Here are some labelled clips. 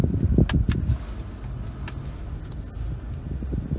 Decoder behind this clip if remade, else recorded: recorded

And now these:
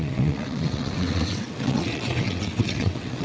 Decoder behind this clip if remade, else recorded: remade, vocoder, WaveNeXt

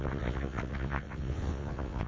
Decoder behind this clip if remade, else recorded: remade, vocoder, WaveNeXt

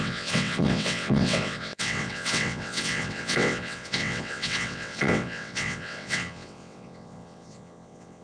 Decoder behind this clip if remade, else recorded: remade, vocoder, WaveNeXt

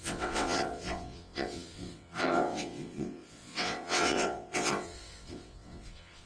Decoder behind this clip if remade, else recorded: remade, vocoder, WaveNeXt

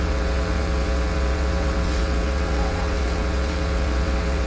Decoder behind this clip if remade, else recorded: remade, vocoder, WaveNeXt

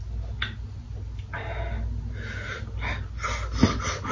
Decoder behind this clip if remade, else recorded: recorded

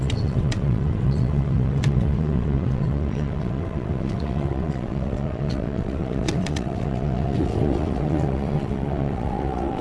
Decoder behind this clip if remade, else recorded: remade, vocoder, WaveNeXt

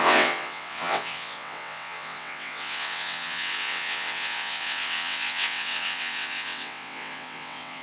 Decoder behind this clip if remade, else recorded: remade, vocoder, WaveNeXt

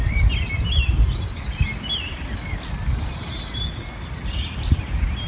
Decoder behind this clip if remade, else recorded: recorded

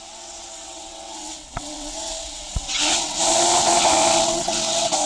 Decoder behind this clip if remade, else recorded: remade, vocoder, WaveNeXt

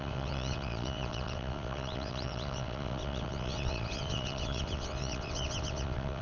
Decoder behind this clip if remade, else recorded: remade, vocoder, WaveNeXt